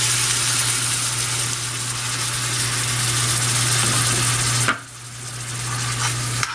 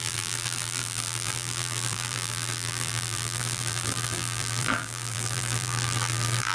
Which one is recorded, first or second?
first